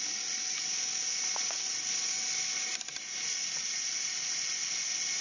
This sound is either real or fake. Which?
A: real